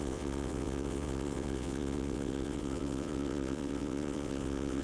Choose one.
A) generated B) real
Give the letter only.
A